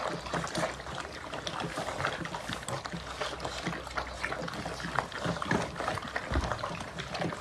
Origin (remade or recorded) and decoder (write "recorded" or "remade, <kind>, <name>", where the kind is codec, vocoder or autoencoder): recorded